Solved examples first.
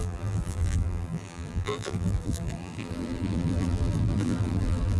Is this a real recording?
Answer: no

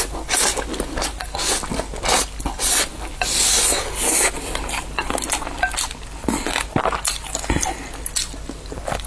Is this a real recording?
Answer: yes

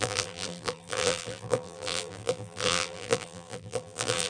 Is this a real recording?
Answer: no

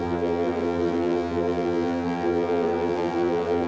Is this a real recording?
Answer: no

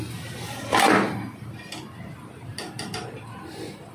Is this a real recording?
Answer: yes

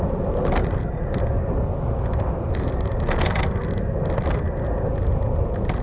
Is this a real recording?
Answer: yes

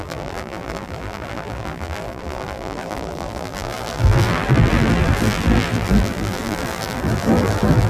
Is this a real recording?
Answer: no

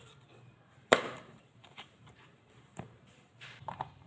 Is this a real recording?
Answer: no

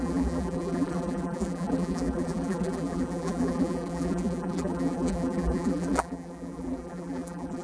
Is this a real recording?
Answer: no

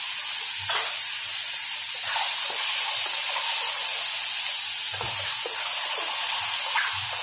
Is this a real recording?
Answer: yes